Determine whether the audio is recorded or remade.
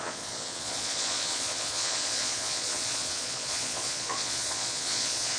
remade